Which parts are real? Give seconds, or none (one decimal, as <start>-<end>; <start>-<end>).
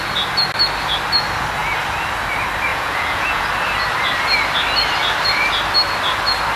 0.0-2.7; 3.4-6.6